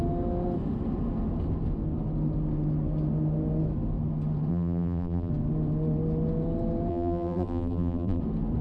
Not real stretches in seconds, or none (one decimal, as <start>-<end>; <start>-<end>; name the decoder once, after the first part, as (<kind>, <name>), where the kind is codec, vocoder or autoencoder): 4.5-5.3 (vocoder, BigVGAN v2); 6.9-8.2